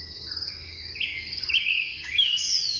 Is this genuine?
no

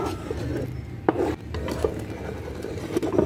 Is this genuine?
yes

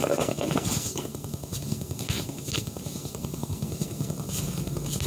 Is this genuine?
no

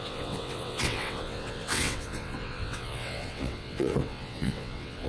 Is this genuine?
no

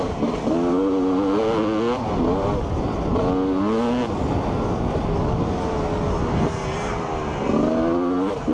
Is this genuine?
yes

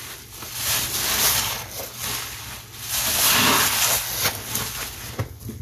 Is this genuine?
yes